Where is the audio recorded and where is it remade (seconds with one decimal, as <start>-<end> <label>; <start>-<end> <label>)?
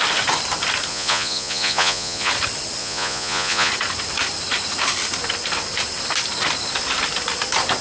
0.0-0.9 recorded; 0.9-2.3 remade; 2.3-2.8 recorded; 2.8-3.7 remade; 3.7-7.8 recorded